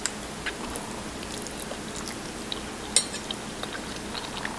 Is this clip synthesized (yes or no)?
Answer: no